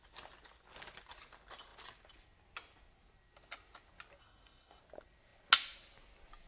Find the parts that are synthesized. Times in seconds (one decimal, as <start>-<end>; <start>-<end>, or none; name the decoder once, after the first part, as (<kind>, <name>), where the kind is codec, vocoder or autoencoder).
4.2-4.8 (codec, SNAC)